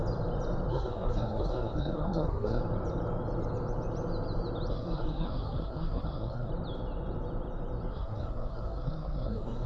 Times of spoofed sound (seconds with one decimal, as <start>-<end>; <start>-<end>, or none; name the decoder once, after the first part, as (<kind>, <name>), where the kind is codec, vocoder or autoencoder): 0.7-2.6 (codec, SNAC); 4.7-6.5; 7.9-9.7

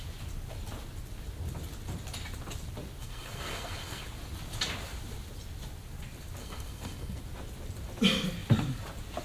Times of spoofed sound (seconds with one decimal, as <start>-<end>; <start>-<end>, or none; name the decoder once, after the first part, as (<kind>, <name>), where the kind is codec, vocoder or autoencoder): 3.0-4.0 (codec, SNAC); 6.4-7.2

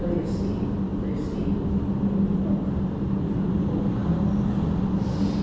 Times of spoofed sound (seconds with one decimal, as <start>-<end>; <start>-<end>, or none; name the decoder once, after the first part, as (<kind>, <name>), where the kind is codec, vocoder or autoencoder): none